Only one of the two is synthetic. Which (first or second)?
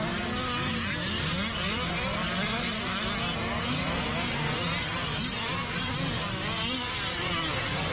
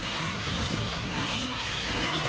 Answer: second